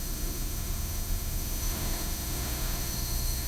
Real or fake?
fake